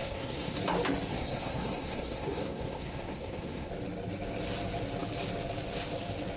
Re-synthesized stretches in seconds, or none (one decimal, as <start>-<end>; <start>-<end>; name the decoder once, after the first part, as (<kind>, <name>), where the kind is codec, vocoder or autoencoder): 0.0-0.6 (codec, SNAC); 1.1-3.7

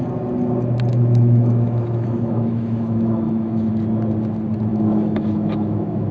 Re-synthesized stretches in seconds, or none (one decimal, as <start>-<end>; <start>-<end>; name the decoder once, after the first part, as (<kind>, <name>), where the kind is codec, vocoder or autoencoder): 0.9-3.7 (autoencoder, DAC-VAE); 4.7-6.1